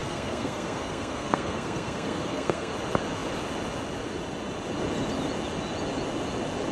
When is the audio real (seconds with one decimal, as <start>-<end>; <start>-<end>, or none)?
2.7-6.7